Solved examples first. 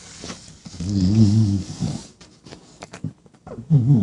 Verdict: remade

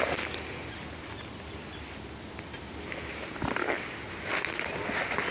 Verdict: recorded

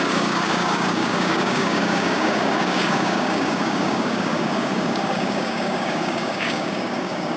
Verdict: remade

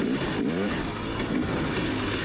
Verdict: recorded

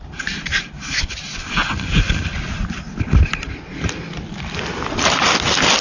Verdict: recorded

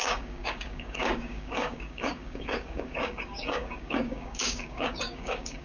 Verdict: remade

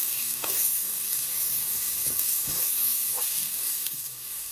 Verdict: remade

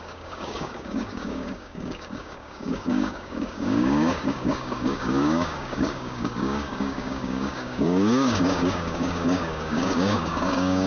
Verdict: remade